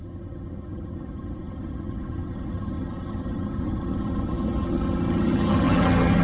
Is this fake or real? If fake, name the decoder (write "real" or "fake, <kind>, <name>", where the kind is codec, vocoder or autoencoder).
fake, vocoder, HiFi-GAN